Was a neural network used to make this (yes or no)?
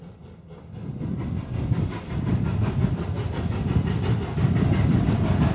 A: no